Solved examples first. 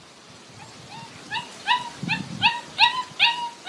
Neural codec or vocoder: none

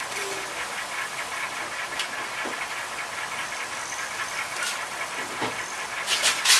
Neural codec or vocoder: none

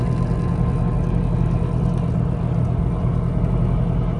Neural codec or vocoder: none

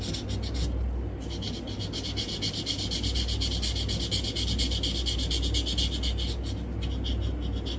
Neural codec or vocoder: none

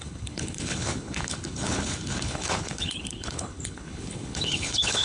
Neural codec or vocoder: codec, HILCodec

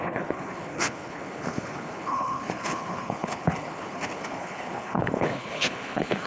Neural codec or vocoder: codec, HILCodec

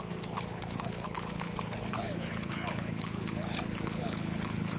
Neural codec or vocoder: codec, HILCodec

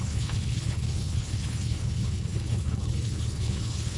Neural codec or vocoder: codec, HILCodec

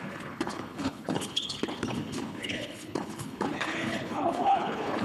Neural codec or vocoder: codec, HILCodec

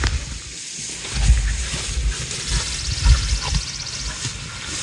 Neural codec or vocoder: none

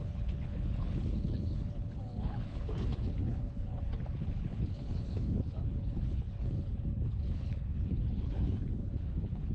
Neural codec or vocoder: codec, HILCodec